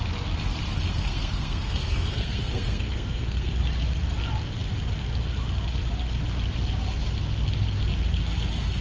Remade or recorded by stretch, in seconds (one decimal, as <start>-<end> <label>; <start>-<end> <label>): 0.0-0.9 recorded; 0.9-3.5 remade; 3.5-8.8 recorded